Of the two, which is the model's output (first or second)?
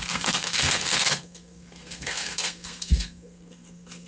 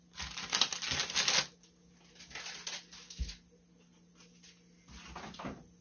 first